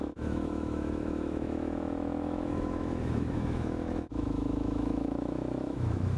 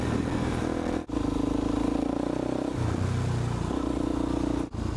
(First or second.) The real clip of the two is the second